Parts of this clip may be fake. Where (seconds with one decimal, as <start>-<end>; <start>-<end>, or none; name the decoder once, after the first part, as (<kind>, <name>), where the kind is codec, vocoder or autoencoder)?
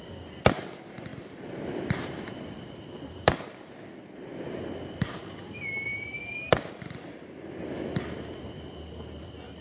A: none